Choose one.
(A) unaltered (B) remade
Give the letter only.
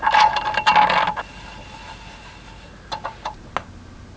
A